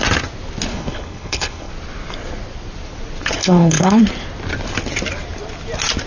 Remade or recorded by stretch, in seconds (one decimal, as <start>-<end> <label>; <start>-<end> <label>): 0.0-0.7 recorded; 0.7-1.7 remade; 1.7-3.4 recorded; 3.4-4.0 remade; 4.0-6.1 recorded